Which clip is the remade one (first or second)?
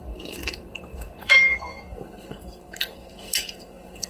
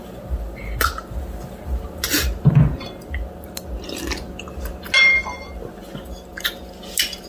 first